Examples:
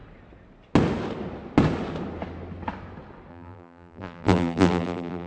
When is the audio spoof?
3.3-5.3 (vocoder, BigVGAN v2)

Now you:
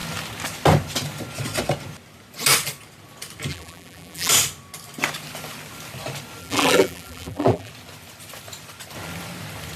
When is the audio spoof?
3.5-4.3 (vocoder, BigVGAN v2); 6.4-7.7